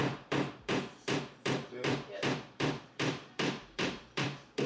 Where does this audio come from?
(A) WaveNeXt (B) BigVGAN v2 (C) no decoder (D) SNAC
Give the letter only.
B